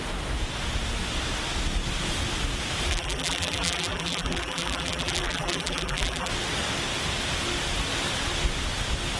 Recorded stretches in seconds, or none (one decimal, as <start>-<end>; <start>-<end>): 0.0-2.9; 6.3-9.2